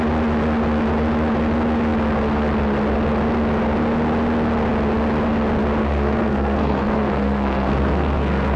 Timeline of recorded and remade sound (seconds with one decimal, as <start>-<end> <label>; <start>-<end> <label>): 0.0-5.8 recorded; 5.8-8.6 remade